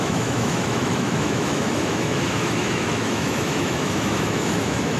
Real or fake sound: fake